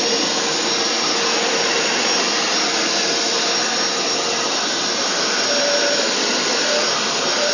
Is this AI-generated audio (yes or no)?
no